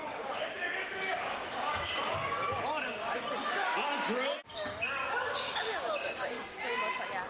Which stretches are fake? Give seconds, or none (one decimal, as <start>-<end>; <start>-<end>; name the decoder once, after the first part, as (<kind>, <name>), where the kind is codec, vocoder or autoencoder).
0.0-2.6 (codec, DAC); 5.0-6.6